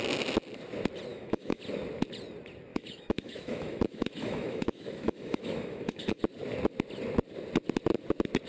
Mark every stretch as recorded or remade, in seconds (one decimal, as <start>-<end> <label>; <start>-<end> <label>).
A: 0.0-1.1 recorded; 1.1-1.6 remade; 1.6-2.7 recorded; 2.7-6.2 remade; 6.2-8.5 recorded